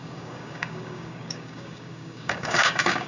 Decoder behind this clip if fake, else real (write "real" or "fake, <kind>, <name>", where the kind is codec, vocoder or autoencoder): fake, codec, DAC